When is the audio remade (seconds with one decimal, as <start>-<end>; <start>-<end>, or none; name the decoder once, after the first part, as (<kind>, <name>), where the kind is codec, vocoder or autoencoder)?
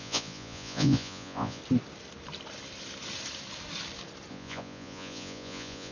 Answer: 0.0-1.6 (vocoder, Vocos); 4.3-5.9